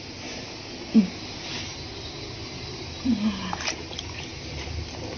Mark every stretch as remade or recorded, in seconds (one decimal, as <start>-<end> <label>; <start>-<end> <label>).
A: 0.0-5.2 recorded